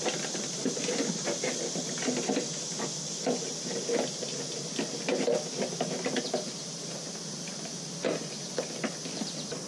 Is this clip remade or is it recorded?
recorded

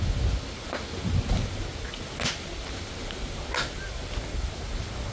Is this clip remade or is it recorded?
recorded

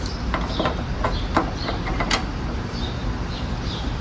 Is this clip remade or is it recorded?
remade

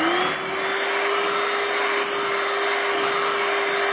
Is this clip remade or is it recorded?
recorded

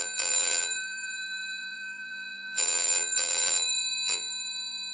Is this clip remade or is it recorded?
remade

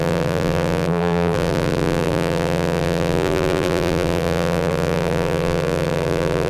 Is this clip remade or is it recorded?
remade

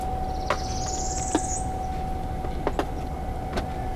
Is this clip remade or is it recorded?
recorded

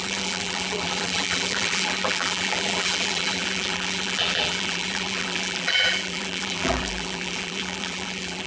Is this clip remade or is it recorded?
remade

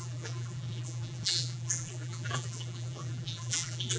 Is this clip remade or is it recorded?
remade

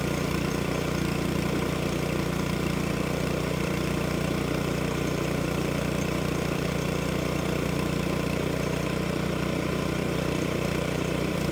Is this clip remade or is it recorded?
remade